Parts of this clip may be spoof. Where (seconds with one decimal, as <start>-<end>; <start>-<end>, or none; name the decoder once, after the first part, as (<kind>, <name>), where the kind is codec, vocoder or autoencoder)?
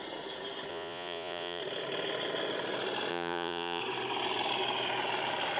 0.7-1.6 (vocoder, Vocos); 3.1-3.8